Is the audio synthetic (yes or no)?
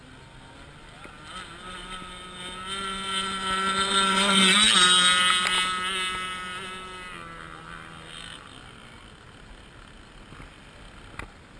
no